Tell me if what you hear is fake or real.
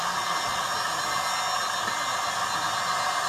real